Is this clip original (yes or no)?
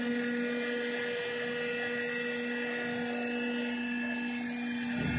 yes